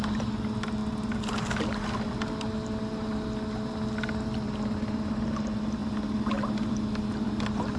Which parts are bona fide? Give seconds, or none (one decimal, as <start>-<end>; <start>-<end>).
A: 0.0-7.8